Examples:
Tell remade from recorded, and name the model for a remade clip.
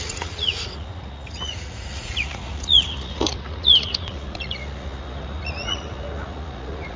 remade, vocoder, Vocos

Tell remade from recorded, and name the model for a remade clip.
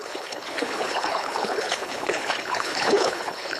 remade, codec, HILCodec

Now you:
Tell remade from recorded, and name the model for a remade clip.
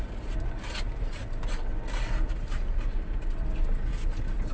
recorded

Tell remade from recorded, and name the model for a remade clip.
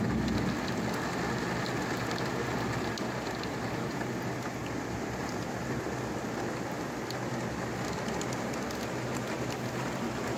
recorded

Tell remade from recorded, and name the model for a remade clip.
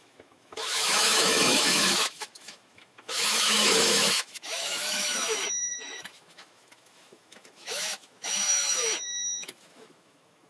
remade, autoencoder, DAC-VAE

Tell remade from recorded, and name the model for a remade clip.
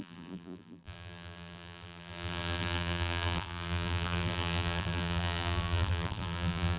remade, vocoder, BigVGAN v2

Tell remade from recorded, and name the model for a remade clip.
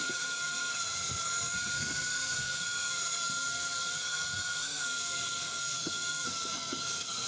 remade, codec, SNAC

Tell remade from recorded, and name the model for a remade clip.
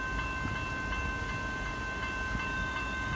recorded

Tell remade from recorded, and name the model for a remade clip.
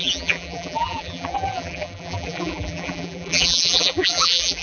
remade, vocoder, BigVGAN v2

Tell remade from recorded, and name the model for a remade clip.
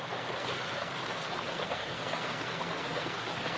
remade, codec, SNAC